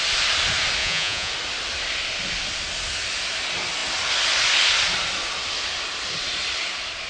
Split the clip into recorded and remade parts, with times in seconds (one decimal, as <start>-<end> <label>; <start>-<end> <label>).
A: 0.0-0.8 recorded; 0.8-1.3 remade; 1.3-7.1 recorded